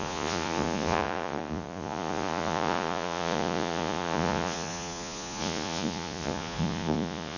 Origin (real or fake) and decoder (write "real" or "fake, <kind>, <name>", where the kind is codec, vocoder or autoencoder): fake, vocoder, Vocos